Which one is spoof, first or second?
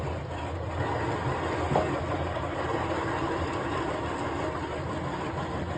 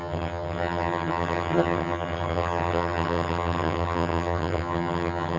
second